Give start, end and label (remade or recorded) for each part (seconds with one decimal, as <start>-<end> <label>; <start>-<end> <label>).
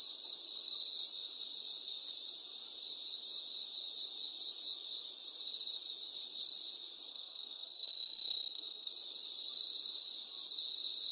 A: 0.0-7.1 recorded; 7.1-8.9 remade; 8.9-11.1 recorded